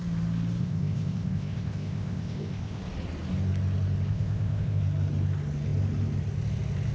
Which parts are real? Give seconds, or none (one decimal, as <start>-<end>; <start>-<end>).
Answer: 0.0-0.6; 2.8-4.1; 4.8-6.9